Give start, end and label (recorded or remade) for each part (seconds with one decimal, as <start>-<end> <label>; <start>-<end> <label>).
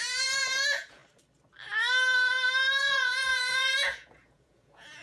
0.0-1.0 remade; 1.0-2.8 recorded; 2.8-5.0 remade